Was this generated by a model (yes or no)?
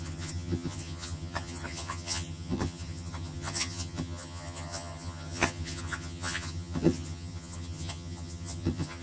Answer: yes